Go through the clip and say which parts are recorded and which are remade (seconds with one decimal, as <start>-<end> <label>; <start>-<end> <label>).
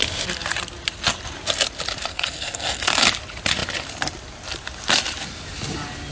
0.0-2.1 recorded; 2.1-2.9 remade; 2.9-6.1 recorded